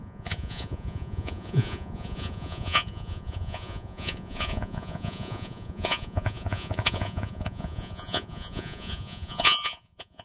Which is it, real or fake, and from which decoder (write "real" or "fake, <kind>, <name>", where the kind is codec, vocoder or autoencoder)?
fake, vocoder, Vocos